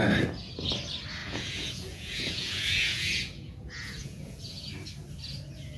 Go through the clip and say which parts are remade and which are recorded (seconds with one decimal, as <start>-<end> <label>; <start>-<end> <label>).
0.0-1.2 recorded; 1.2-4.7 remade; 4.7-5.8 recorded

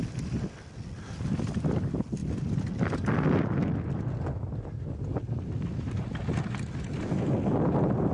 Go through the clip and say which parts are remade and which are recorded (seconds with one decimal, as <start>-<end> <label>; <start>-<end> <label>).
0.0-8.1 recorded

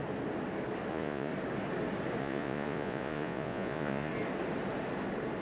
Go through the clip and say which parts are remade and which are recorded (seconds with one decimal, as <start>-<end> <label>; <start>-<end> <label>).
0.0-0.9 recorded; 0.9-1.3 remade; 1.3-2.2 recorded; 2.2-4.1 remade; 4.1-5.4 recorded

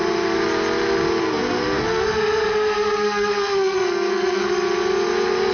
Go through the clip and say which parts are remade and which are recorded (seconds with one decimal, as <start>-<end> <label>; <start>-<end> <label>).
0.0-1.2 recorded; 1.2-4.5 remade; 4.5-5.5 recorded

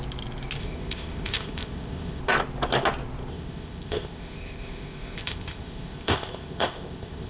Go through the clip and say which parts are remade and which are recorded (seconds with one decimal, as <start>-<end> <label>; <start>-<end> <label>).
0.0-0.6 recorded; 0.6-2.2 remade; 2.2-3.3 recorded; 3.3-7.3 remade